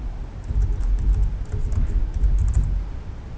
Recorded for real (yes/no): yes